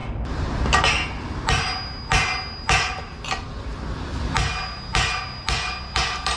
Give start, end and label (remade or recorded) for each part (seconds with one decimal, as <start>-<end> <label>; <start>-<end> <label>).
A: 0.0-6.4 recorded

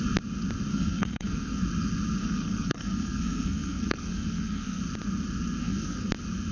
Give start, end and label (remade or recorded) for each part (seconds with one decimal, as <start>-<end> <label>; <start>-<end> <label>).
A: 0.0-0.7 recorded; 0.7-1.6 remade; 1.6-2.2 recorded; 2.2-4.8 remade; 4.8-5.6 recorded; 5.6-6.1 remade; 6.1-6.5 recorded

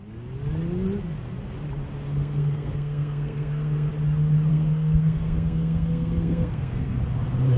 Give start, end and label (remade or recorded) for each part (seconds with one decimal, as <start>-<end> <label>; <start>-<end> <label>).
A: 0.0-2.2 recorded; 2.2-3.9 remade; 3.9-4.5 recorded; 4.5-7.0 remade; 7.0-7.6 recorded

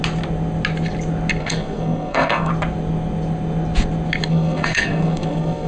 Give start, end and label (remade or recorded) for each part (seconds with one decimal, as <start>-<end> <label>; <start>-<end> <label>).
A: 0.0-1.4 recorded; 1.4-2.5 remade; 2.5-4.3 recorded; 4.3-5.7 remade

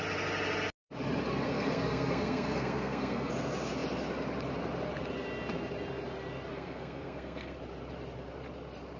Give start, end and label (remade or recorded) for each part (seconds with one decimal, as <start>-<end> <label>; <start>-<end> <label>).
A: 0.0-1.3 recorded; 1.3-3.3 remade; 3.3-6.5 recorded; 6.5-7.6 remade; 7.6-9.0 recorded

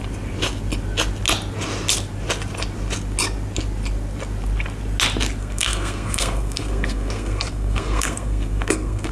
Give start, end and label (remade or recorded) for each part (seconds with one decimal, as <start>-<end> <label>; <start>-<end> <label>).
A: 0.0-5.4 recorded; 5.4-9.1 remade